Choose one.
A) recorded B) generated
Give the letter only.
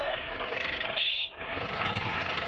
B